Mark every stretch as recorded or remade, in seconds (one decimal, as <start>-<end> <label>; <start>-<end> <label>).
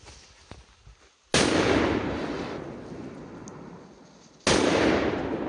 0.0-5.5 recorded